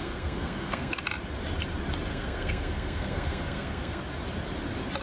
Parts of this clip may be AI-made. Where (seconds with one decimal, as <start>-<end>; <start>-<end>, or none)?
0.0-1.0; 2.1-4.0